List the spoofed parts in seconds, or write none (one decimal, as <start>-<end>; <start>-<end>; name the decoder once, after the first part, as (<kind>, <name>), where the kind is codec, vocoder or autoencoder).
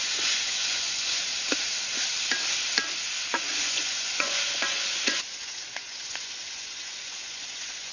0.0-1.3 (vocoder, Vocos); 3.3-7.9